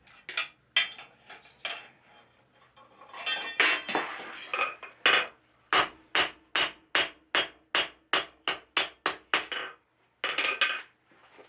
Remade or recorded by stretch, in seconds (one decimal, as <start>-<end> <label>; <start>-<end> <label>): 0.0-11.5 recorded